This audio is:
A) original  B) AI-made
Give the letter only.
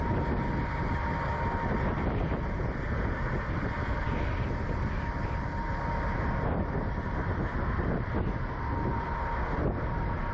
A